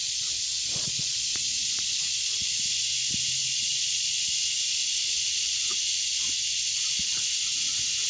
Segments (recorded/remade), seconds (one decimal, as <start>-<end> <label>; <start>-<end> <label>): 0.0-2.6 remade; 2.6-3.4 recorded; 3.4-4.2 remade; 4.2-8.1 recorded